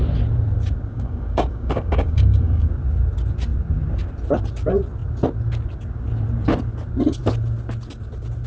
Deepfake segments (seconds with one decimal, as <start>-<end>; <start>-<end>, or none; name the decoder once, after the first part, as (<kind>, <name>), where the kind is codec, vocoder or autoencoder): 0.9-2.7 (codec, DAC)